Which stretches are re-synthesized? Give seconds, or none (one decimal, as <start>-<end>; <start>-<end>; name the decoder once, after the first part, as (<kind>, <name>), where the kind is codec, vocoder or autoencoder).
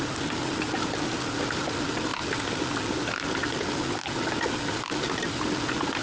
0.0-2.1 (vocoder, BigVGAN v2); 4.9-6.0